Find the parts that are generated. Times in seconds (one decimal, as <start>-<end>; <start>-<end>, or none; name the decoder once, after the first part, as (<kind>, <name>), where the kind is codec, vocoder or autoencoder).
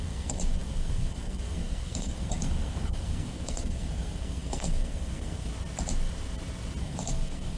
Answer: 0.0-5.5 (codec, SNAC); 6.8-7.6